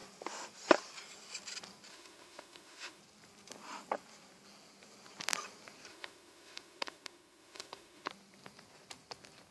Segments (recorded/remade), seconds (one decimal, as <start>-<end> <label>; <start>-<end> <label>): 0.0-1.9 recorded; 1.9-3.0 remade; 3.0-5.9 recorded; 5.9-8.1 remade; 8.1-9.5 recorded